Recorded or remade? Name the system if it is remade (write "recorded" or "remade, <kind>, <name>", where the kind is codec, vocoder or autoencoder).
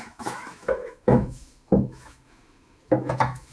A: remade, autoencoder, DAC-VAE